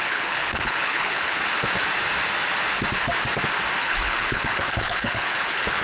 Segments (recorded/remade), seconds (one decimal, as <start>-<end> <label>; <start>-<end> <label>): 0.0-1.4 remade; 1.4-3.8 recorded; 3.8-5.8 remade